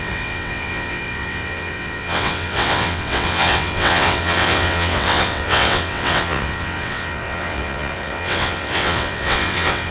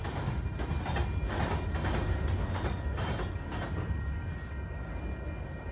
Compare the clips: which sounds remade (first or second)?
first